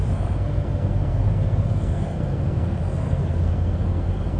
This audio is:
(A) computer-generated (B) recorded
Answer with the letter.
A